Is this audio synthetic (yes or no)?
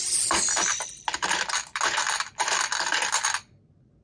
no